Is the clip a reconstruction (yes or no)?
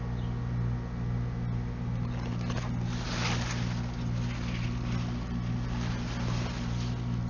no